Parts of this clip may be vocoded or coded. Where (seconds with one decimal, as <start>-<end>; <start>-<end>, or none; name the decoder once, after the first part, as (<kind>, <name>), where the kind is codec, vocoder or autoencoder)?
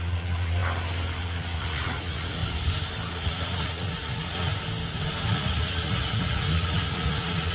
0.0-0.6 (vocoder, Vocos); 1.2-2.4; 3.1-4.5; 5.3-7.5